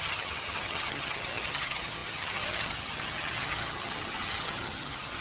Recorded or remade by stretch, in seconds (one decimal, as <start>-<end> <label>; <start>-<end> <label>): 0.0-5.2 remade